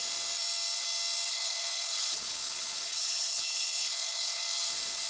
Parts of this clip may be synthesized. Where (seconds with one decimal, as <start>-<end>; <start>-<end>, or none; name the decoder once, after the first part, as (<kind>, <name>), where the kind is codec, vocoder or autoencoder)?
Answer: 1.3-4.4 (codec, HILCodec)